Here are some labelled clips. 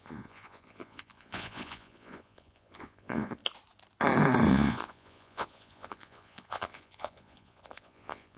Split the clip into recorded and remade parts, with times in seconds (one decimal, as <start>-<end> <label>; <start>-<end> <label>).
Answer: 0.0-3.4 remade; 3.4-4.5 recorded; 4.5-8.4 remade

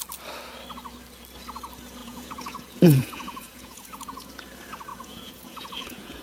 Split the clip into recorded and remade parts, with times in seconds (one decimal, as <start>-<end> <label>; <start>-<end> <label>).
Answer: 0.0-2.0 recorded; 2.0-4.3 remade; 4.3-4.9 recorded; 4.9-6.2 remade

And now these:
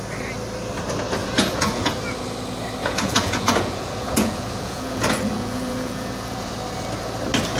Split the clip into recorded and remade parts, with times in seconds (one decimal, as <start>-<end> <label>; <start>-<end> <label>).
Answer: 0.0-1.2 recorded; 1.2-1.9 remade; 1.9-2.8 recorded; 2.8-6.5 remade; 6.5-7.6 recorded

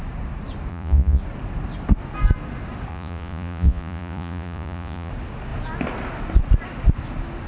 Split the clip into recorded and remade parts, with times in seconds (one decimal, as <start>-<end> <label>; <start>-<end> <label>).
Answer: 0.0-0.7 recorded; 0.7-1.2 remade; 1.2-2.9 recorded; 2.9-5.1 remade; 5.1-7.5 recorded